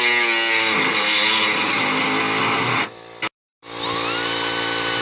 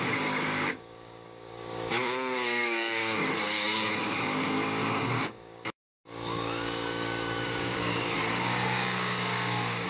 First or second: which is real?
first